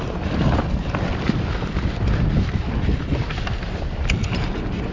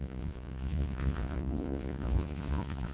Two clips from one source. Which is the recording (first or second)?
first